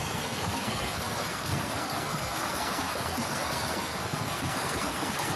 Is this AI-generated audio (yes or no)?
yes